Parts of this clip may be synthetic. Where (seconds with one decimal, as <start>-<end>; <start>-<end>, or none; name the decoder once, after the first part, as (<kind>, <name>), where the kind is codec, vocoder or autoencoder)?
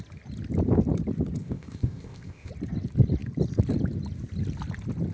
1.4-2.5 (codec, ZipCodec)